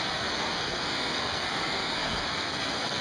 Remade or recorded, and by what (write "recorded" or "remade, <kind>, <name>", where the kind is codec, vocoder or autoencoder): remade, codec, SNAC